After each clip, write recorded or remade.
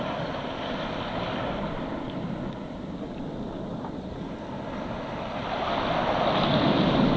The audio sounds recorded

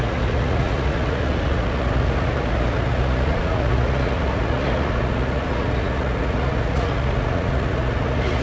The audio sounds remade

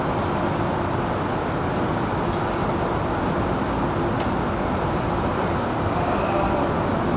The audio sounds recorded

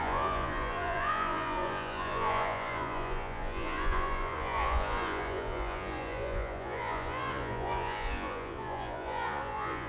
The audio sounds remade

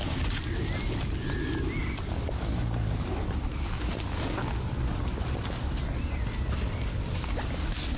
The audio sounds recorded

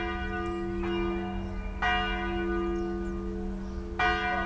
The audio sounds recorded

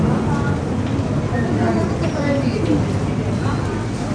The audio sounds recorded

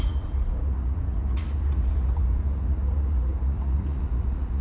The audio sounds remade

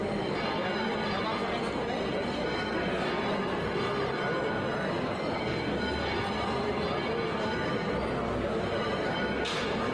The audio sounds recorded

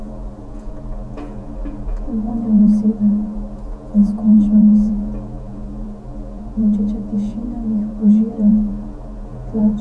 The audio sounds remade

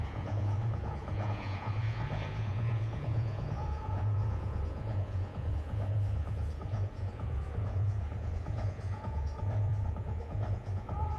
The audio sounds remade